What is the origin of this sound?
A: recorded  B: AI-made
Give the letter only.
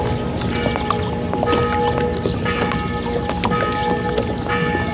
A